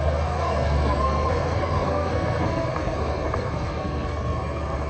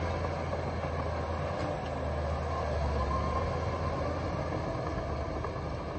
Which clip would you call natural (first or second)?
second